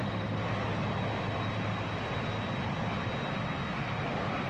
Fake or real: real